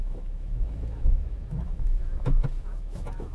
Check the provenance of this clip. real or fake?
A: fake